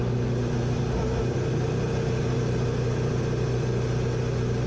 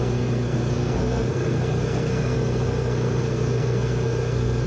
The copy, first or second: second